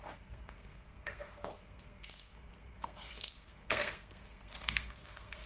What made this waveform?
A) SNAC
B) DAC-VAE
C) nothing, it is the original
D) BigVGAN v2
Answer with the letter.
A